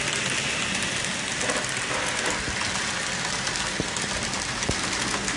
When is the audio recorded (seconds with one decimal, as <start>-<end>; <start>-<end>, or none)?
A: 0.0-5.4